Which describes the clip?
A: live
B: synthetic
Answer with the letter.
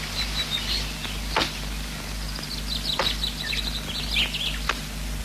A